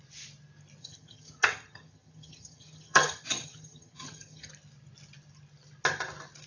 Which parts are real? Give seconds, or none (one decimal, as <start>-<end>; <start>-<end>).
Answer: 0.0-0.8; 4.5-6.5